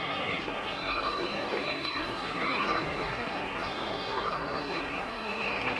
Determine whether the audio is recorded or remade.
remade